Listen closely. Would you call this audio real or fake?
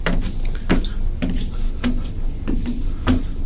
real